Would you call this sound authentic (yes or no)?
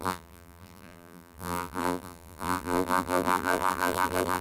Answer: no